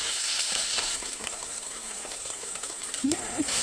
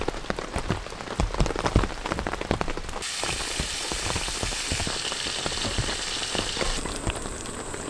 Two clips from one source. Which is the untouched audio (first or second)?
second